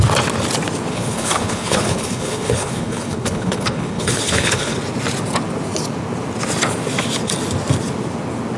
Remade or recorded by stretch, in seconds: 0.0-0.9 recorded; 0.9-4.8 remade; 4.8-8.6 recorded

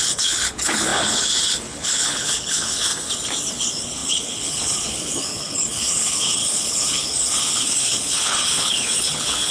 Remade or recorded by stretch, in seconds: 0.0-2.9 remade; 2.9-3.5 recorded; 3.5-9.5 remade

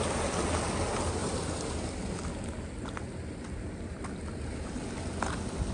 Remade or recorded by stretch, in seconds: 0.0-5.7 recorded